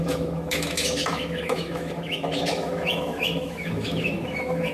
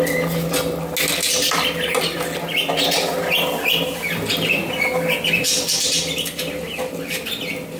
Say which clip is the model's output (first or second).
first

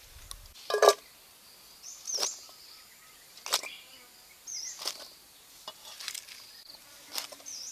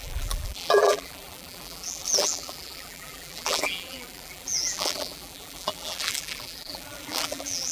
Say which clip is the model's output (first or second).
second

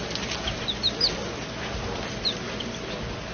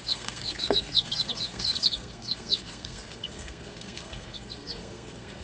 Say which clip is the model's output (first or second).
second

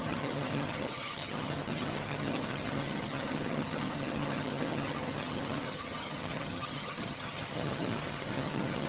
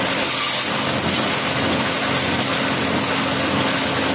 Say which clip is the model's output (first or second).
first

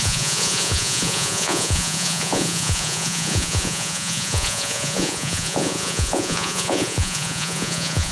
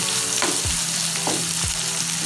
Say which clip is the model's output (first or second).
first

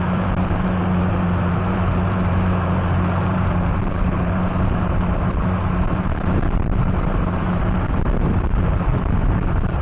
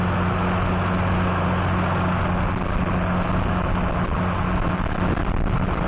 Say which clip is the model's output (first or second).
first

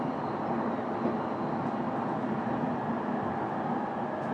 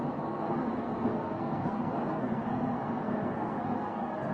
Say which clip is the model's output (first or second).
second